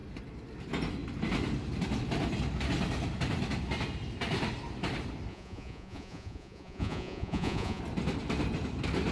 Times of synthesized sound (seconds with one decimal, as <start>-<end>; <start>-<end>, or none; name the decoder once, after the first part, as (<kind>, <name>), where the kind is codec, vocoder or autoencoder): 5.3-7.8 (vocoder, Vocos)